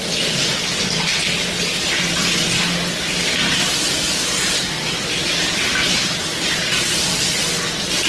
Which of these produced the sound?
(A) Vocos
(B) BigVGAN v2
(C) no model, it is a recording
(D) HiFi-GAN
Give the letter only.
C